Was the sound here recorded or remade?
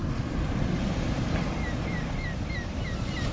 recorded